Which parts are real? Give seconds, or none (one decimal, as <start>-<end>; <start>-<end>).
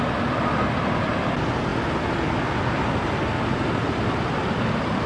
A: 0.0-5.1